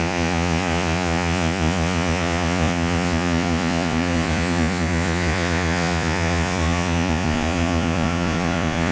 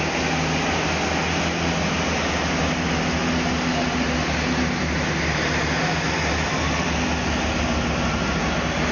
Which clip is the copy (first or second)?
first